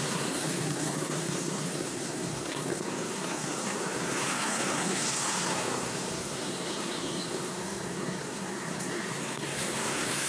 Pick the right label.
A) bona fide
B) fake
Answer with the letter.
B